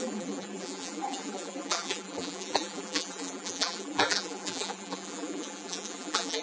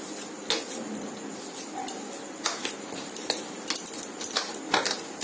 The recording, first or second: second